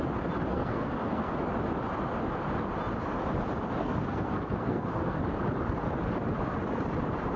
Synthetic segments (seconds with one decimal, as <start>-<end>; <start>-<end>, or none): 0.5-1.3; 3.8-5.2